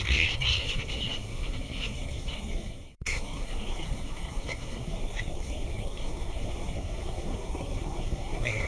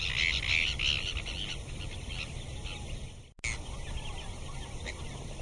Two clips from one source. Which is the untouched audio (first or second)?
second